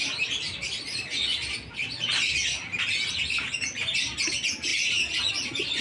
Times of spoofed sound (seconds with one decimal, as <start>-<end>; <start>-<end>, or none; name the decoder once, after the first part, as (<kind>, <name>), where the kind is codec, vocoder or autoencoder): none